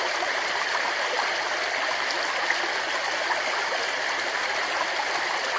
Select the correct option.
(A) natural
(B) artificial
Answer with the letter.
A